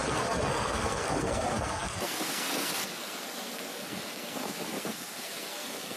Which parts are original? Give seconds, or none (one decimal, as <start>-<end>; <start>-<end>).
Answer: none